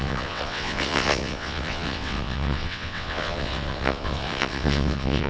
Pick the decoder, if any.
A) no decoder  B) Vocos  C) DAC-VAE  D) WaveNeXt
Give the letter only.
D